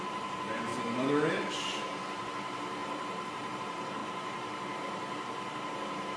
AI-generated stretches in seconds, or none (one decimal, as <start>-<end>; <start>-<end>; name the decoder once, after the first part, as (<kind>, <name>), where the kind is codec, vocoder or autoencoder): 0.0-0.7 (vocoder, BigVGAN v2); 1.3-6.2